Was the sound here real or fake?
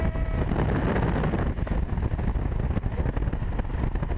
real